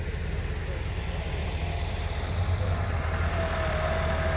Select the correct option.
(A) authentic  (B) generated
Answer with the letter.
A